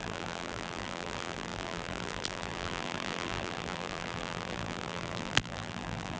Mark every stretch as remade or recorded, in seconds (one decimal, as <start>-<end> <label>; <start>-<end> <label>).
0.0-6.2 remade